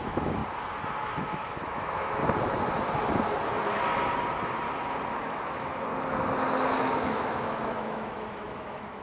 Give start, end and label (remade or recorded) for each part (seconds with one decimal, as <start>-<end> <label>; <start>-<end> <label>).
0.0-0.4 remade; 0.4-1.0 recorded; 1.0-2.2 remade; 2.2-5.2 recorded; 5.2-5.9 remade; 5.9-6.8 recorded; 6.8-9.0 remade